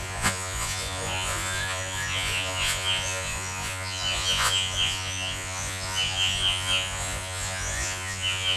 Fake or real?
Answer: fake